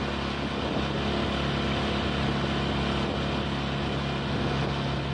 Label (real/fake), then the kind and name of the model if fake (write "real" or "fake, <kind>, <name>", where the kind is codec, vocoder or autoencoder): real